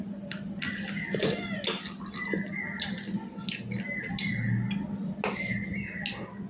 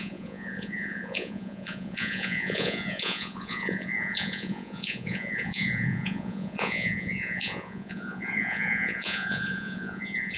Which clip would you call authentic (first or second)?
first